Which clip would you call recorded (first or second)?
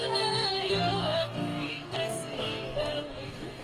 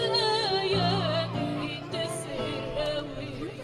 second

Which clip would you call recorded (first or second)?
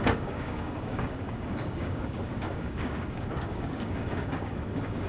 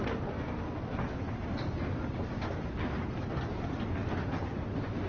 second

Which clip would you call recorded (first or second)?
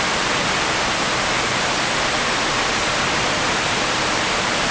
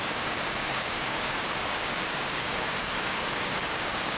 first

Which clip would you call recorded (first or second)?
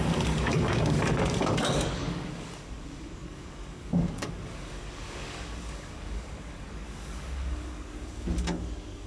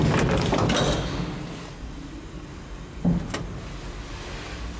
second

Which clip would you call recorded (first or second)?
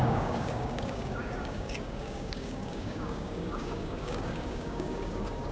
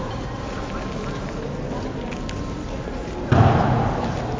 second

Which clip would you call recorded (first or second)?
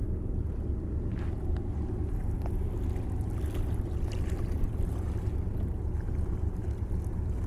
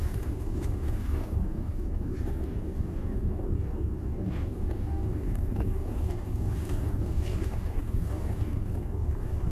first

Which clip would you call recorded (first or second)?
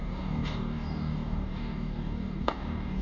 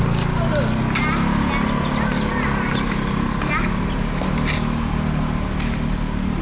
second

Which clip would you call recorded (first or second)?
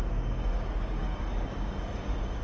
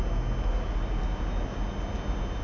second